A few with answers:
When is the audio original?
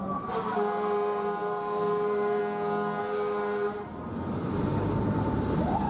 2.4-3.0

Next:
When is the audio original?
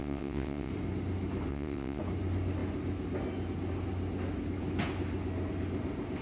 0.7-1.5; 2.0-6.2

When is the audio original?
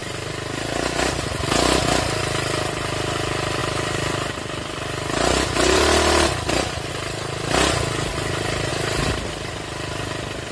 0.0-3.6; 6.9-10.5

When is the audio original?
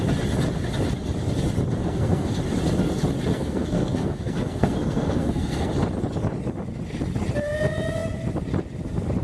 0.0-1.8; 2.3-3.3; 5.7-9.2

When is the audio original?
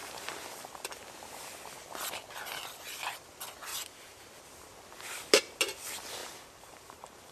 0.0-3.7; 4.2-6.2